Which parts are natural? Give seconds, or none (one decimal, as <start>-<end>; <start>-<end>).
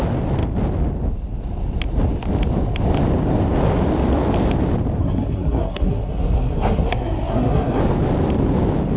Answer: 0.0-5.0; 7.8-9.0